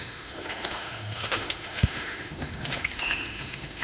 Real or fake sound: fake